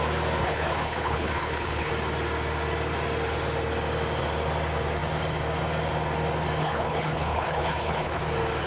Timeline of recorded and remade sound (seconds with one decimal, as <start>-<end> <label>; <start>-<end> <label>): 0.0-0.4 recorded; 0.4-1.9 remade; 1.9-6.6 recorded; 6.6-8.2 remade; 8.2-8.7 recorded